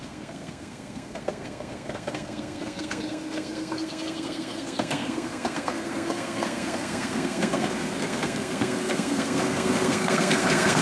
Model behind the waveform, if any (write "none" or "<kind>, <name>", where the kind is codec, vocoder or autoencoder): codec, SNAC